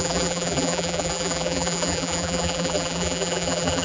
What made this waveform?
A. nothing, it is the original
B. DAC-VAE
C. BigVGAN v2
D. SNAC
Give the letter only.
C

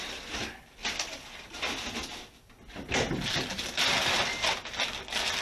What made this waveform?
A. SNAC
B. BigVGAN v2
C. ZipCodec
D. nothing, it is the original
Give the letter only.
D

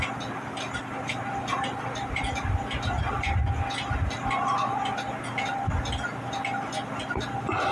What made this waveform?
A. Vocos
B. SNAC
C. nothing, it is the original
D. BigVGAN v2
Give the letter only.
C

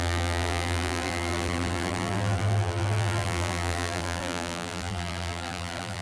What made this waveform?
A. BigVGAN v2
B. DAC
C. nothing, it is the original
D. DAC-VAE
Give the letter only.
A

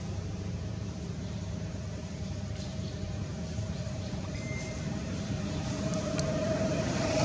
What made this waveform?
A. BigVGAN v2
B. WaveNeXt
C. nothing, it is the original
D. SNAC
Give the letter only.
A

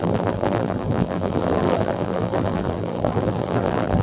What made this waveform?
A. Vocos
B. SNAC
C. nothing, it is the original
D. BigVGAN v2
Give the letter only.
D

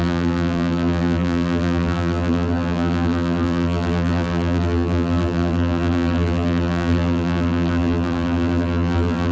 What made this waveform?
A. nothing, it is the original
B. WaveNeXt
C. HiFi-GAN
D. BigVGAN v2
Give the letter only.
D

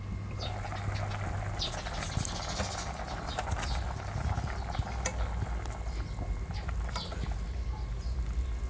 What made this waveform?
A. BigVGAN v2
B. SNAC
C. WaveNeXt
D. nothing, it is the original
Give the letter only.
D